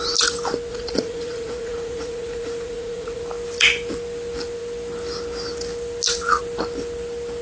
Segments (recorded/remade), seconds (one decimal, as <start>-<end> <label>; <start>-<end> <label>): 0.0-0.7 recorded; 0.7-3.2 remade; 3.2-7.4 recorded